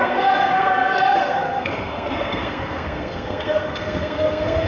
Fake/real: fake